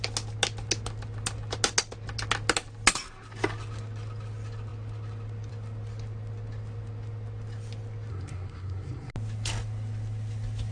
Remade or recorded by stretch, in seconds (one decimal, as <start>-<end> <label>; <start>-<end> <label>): 0.0-8.1 recorded; 8.1-9.1 remade; 9.1-10.7 recorded